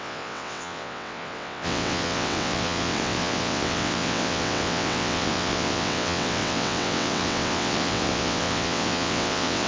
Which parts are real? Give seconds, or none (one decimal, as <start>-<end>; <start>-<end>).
none